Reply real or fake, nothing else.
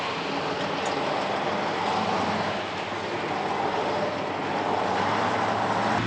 real